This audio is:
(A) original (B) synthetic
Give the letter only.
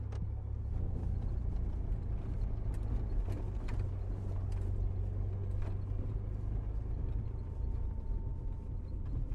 A